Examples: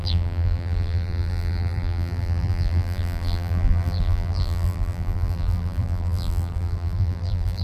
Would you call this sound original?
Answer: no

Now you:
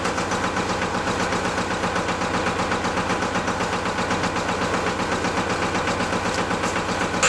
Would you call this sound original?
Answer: yes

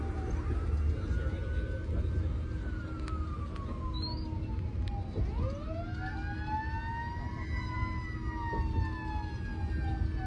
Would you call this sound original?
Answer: yes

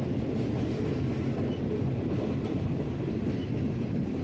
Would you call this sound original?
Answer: yes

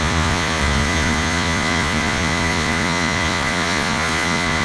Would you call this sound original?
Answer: no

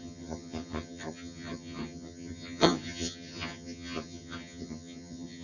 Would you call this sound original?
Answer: no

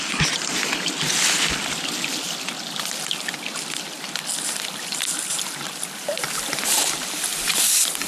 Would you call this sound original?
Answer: yes